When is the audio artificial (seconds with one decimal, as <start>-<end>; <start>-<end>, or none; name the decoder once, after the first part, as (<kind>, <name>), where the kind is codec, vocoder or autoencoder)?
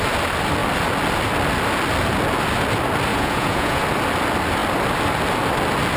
3.1-3.8 (vocoder, Vocos)